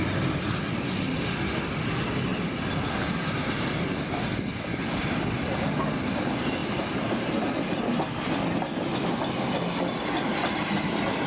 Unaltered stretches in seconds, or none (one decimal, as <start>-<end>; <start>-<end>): 0.0-2.3; 3.5-6.6; 7.5-11.3